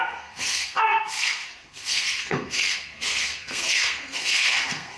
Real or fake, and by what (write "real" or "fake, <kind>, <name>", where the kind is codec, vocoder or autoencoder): fake, codec, SNAC